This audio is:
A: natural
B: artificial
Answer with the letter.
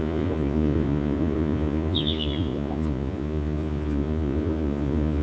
B